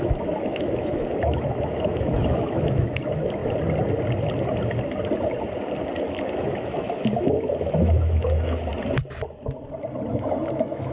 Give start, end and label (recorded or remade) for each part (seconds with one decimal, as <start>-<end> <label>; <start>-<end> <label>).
0.0-3.4 remade; 3.4-6.0 recorded; 6.0-8.7 remade; 8.7-10.1 recorded; 10.1-10.9 remade